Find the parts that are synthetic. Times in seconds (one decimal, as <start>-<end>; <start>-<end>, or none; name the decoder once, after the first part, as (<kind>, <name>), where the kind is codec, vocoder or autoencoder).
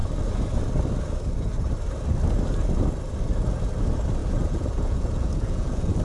4.2-6.0 (vocoder, Vocos)